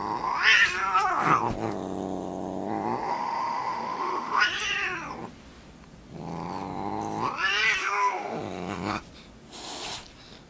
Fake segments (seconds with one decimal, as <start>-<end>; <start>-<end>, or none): 3.1-4.4; 7.8-9.0